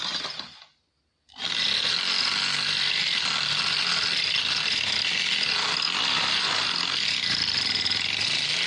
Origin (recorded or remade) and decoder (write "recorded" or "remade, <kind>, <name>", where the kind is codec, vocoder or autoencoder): recorded